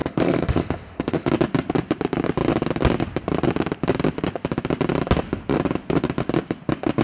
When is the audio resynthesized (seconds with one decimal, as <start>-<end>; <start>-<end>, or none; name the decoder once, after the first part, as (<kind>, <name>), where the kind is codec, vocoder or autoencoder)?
0.0-1.3 (autoencoder, DAC-VAE)